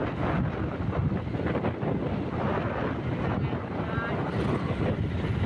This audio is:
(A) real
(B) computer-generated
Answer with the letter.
A